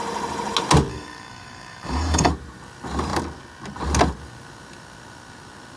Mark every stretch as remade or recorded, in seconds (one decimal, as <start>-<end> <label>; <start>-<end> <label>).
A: 0.0-0.9 recorded; 0.9-2.3 remade; 2.3-5.8 recorded

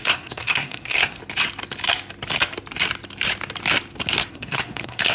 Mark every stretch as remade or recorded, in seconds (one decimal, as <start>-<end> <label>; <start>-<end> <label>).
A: 0.0-1.2 remade; 1.2-4.3 recorded; 4.3-5.1 remade

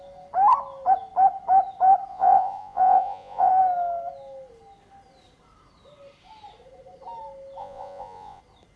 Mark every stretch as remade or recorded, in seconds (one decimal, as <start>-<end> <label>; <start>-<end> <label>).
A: 0.0-2.1 recorded; 2.1-3.5 remade; 3.5-7.6 recorded; 7.6-8.4 remade; 8.4-8.8 recorded

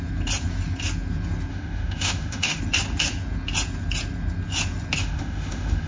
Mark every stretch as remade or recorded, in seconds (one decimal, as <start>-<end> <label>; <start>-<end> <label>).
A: 0.0-1.5 recorded; 1.5-2.6 remade; 2.6-5.0 recorded; 5.0-5.9 remade

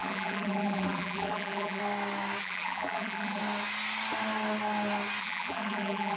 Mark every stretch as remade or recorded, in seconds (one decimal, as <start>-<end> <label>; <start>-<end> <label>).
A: 0.0-1.8 remade; 1.8-2.4 recorded; 2.4-3.4 remade; 3.4-5.2 recorded; 5.2-6.2 remade

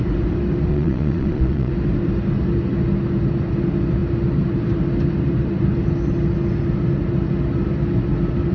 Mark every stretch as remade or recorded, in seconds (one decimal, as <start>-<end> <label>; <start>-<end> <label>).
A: 0.0-0.7 recorded; 0.7-1.7 remade; 1.7-8.5 recorded

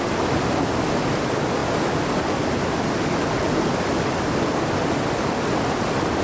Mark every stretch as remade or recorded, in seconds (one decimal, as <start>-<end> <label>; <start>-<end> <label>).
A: 0.0-6.2 recorded